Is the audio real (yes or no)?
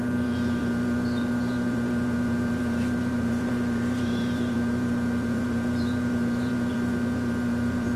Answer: no